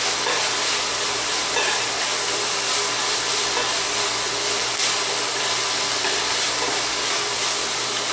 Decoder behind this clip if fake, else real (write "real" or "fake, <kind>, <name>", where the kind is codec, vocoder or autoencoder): real